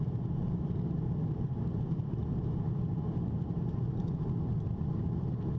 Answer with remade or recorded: recorded